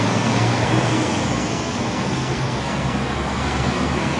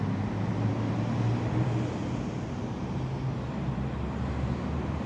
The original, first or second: second